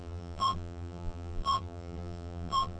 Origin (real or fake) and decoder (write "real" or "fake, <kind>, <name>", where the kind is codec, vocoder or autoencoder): fake, vocoder, BigVGAN v2